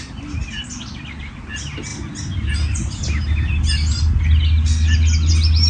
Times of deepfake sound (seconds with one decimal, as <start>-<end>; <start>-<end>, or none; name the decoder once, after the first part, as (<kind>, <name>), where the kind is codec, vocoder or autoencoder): none